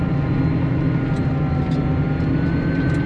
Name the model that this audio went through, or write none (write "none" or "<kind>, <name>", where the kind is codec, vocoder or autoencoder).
none